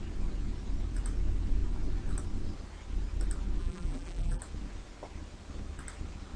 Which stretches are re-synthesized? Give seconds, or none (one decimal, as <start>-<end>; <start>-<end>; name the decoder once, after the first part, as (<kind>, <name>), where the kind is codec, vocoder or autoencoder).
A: 3.6-4.4 (vocoder, BigVGAN v2)